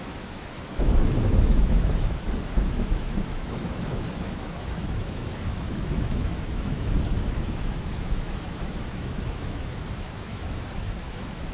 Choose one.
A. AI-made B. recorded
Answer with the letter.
A